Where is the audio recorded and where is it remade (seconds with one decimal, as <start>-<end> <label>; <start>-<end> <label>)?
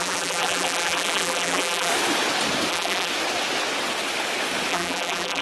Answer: 0.0-1.9 remade; 1.9-2.7 recorded; 2.7-3.1 remade; 3.1-4.7 recorded; 4.7-5.4 remade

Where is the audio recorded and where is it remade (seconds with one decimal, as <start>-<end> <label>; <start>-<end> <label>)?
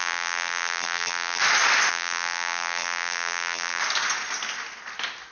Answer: 0.0-1.4 remade; 1.4-1.9 recorded; 1.9-3.8 remade; 3.8-5.3 recorded